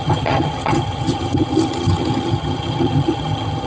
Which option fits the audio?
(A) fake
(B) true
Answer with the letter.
A